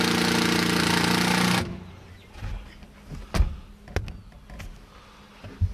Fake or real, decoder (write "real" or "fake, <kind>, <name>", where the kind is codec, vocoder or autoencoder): real